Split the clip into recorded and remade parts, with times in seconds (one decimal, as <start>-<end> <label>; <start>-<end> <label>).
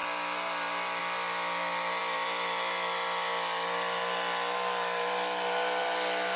0.0-6.4 recorded